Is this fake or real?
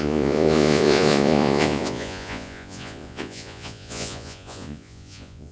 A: fake